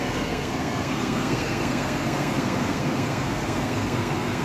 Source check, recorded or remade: remade